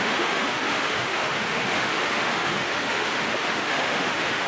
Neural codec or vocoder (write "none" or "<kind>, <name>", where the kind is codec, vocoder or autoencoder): autoencoder, DAC-VAE